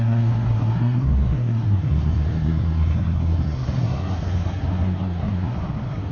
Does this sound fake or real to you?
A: fake